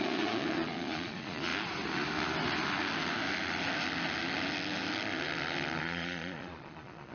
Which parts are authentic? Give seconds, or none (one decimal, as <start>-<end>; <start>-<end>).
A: 1.5-5.8